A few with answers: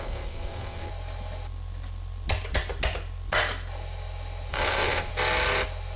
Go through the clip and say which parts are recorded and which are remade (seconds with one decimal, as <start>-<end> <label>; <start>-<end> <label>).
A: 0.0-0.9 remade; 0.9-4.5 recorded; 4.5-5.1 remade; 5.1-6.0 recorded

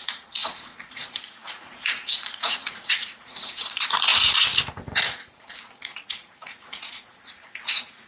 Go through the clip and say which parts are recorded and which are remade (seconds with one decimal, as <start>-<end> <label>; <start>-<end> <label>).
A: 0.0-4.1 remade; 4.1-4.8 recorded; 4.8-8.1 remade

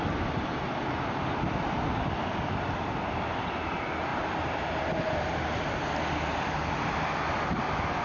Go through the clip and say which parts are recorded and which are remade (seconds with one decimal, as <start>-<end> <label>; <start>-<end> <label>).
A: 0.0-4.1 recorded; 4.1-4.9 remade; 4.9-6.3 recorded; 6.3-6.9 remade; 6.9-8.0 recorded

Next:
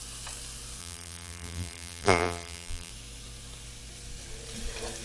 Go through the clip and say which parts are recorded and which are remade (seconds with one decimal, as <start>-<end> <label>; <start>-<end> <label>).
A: 0.0-0.8 recorded; 0.8-2.9 remade; 2.9-5.0 recorded